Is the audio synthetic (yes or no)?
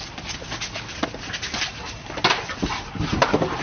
no